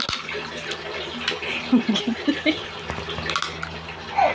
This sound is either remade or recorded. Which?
recorded